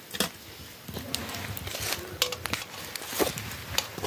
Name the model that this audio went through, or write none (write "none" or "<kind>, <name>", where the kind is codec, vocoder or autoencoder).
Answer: none